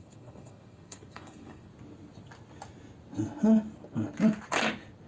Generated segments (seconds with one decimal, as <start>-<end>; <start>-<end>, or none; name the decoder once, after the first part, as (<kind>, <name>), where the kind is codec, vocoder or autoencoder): 0.0-1.7 (codec, SNAC)